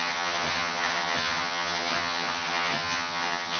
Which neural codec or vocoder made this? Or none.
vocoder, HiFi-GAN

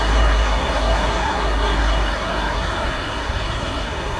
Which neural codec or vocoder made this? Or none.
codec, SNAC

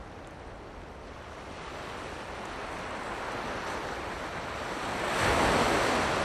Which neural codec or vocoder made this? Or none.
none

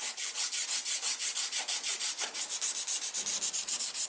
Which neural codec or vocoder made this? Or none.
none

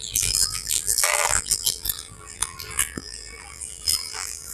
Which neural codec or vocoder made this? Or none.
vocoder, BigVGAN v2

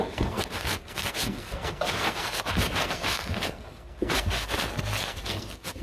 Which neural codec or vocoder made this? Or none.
codec, SNAC